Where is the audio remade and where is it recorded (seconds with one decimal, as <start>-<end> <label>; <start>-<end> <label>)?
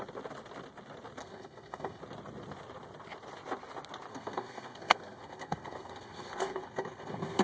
0.0-1.2 recorded; 1.2-2.0 remade; 2.0-4.1 recorded; 4.1-7.4 remade